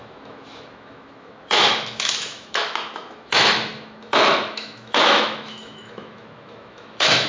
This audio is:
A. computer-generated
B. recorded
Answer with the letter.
A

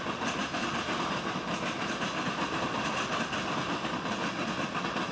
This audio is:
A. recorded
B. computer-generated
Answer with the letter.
A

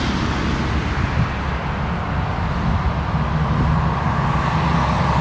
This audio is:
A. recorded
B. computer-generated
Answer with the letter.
A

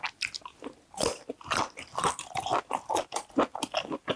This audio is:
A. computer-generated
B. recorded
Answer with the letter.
B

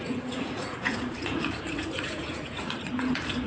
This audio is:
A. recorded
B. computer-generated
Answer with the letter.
B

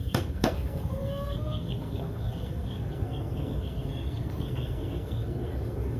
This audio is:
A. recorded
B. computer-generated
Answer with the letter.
B